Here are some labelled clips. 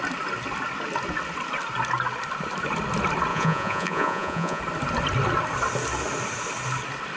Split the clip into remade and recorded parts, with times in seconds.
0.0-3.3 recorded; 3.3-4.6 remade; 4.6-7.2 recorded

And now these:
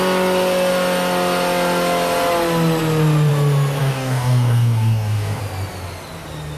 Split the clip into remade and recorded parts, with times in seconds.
0.0-3.8 recorded; 3.8-5.4 remade; 5.4-6.6 recorded